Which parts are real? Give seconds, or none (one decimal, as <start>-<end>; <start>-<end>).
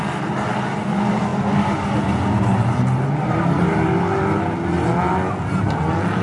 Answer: 0.0-6.2